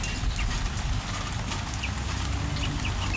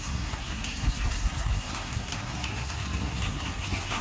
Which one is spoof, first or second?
second